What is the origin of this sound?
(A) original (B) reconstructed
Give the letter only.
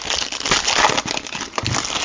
A